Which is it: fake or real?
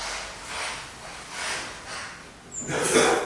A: real